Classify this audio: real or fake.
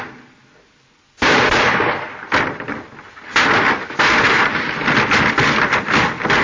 real